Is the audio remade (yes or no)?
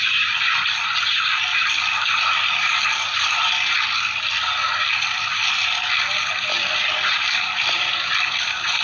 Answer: no